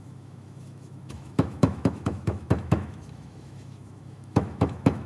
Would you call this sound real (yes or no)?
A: no